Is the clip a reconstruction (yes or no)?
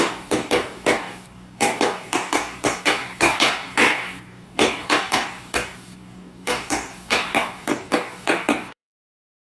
yes